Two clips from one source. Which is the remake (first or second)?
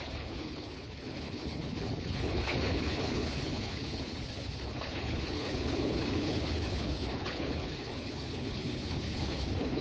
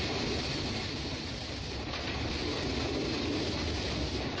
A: first